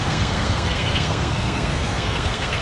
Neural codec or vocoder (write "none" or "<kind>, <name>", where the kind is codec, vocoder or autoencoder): codec, SNAC